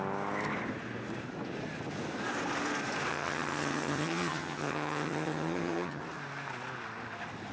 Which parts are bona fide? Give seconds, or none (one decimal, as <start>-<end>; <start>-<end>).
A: 0.0-3.1; 6.0-7.5